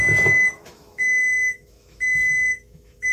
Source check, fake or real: fake